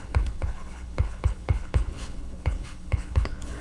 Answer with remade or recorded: remade